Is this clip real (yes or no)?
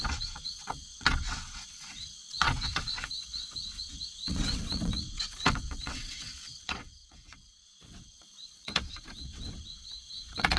no